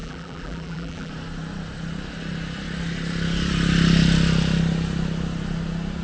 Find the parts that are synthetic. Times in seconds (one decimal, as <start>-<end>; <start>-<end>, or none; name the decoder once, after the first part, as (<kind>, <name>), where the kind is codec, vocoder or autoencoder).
0.0-1.1 (vocoder, BigVGAN v2)